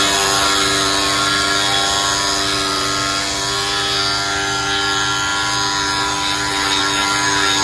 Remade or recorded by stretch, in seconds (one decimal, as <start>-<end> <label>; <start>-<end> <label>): 0.0-7.6 recorded